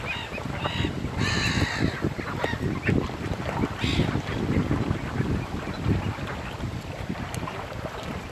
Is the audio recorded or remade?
recorded